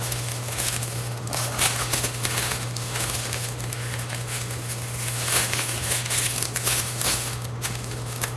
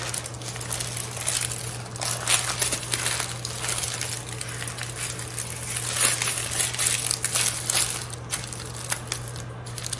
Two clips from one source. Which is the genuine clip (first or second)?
second